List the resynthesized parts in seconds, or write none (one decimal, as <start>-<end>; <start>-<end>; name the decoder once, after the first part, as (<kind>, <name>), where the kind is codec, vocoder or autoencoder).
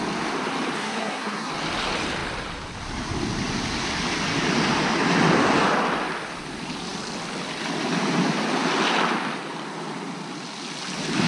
0.8-1.5 (codec, SNAC)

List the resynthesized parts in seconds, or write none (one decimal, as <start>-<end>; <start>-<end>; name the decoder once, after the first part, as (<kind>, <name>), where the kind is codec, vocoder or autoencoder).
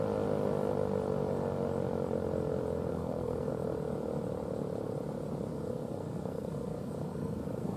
2.9-3.5 (codec, SNAC); 5.5-7.8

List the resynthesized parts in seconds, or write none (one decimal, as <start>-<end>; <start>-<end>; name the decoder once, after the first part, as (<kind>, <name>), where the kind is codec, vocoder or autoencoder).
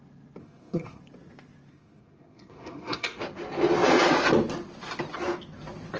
0.4-1.0 (codec, SNAC); 1.7-3.2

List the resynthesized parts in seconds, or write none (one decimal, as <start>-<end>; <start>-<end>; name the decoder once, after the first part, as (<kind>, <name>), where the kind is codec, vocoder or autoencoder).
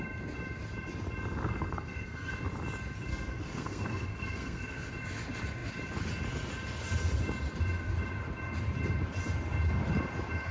1.5-2.3 (codec, SNAC); 3.1-4.9